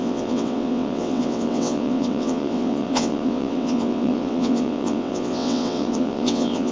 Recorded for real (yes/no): no